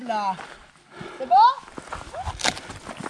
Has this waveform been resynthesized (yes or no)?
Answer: no